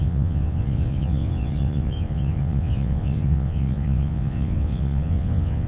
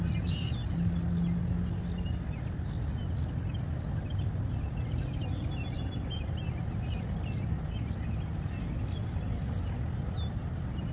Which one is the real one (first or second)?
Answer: second